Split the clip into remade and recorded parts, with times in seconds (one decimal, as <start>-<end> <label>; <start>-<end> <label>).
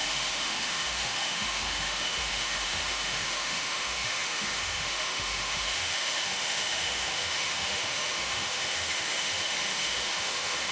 0.0-10.7 remade